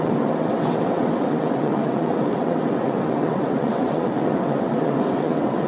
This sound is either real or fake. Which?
fake